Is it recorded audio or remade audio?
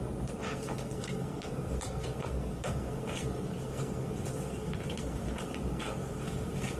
remade